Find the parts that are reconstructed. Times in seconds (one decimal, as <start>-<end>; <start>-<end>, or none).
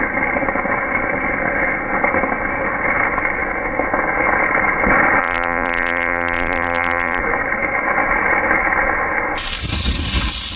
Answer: 5.2-7.2